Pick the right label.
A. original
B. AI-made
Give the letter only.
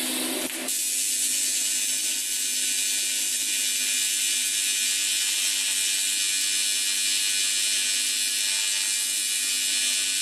A